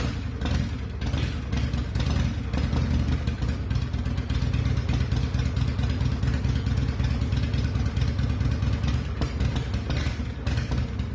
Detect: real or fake real